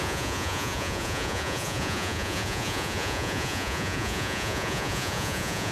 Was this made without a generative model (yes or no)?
no